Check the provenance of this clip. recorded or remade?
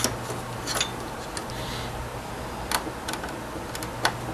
recorded